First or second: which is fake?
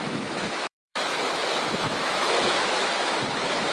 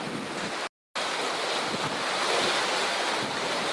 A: first